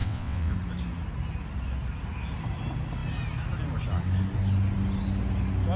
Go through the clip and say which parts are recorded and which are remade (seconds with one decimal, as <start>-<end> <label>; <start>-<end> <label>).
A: 0.0-0.5 remade; 0.5-5.8 recorded